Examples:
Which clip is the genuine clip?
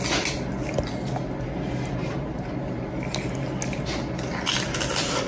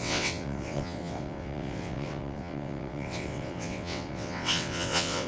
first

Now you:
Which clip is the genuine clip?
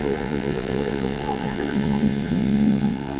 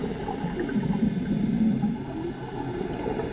second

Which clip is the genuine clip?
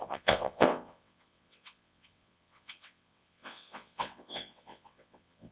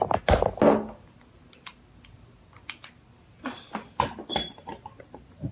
second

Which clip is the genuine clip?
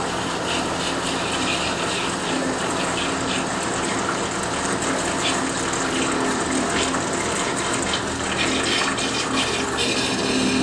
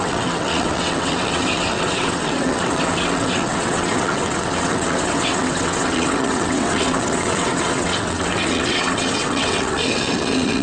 first